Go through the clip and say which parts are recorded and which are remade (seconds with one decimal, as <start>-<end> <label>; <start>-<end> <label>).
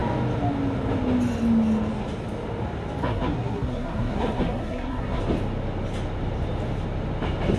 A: 0.0-3.0 recorded; 3.0-5.2 remade; 5.2-7.6 recorded